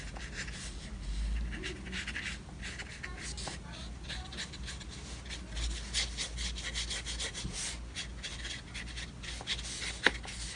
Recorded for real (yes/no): yes